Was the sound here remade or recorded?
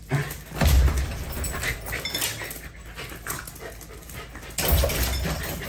recorded